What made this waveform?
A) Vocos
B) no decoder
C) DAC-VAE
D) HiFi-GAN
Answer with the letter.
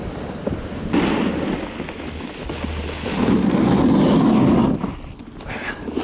B